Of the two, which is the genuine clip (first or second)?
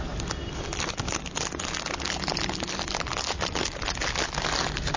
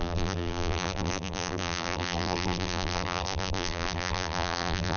first